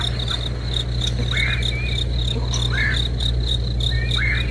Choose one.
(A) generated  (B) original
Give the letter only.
B